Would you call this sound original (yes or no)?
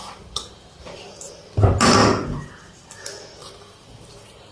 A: yes